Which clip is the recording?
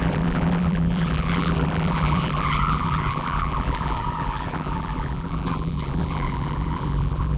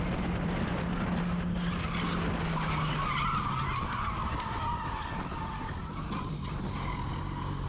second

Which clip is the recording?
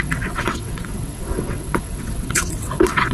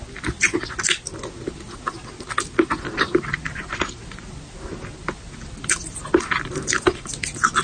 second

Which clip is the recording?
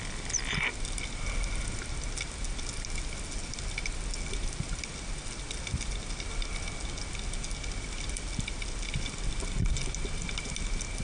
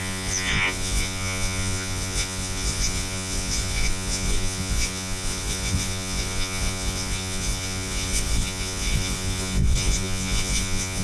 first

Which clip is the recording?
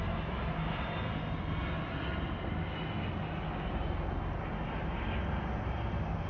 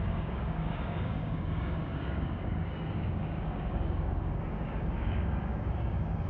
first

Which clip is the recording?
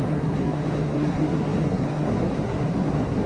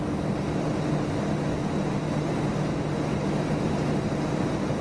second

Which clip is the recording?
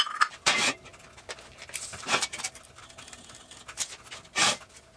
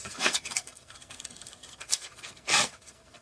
first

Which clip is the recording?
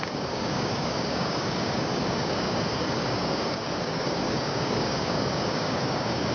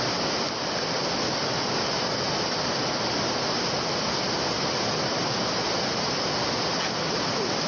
second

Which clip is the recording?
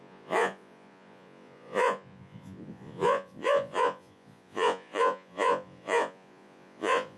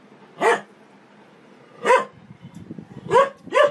second